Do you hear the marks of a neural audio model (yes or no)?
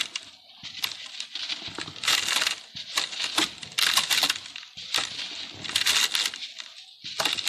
no